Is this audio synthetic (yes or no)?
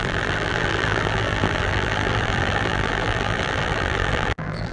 yes